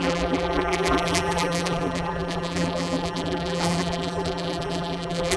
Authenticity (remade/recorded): remade